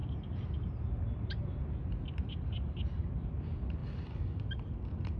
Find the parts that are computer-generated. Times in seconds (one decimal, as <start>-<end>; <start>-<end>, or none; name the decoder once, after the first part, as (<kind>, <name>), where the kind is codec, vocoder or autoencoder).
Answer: none